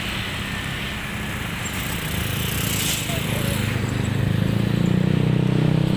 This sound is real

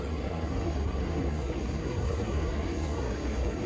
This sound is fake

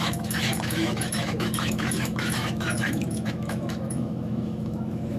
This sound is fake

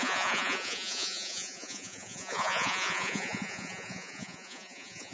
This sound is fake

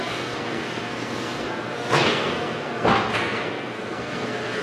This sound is fake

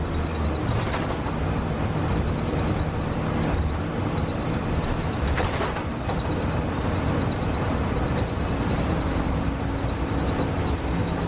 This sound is real